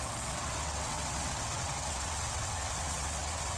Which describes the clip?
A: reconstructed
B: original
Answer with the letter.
A